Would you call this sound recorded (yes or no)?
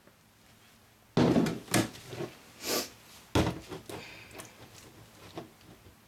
yes